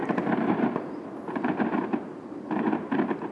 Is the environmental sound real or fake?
real